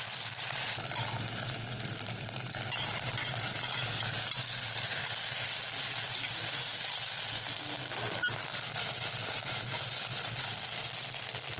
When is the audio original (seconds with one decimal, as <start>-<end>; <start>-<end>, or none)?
0.0-11.6